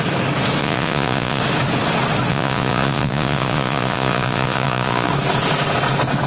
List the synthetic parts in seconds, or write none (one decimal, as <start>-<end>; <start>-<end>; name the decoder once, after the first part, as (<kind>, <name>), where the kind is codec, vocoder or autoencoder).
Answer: 0.6-1.4 (vocoder, Vocos); 2.3-5.1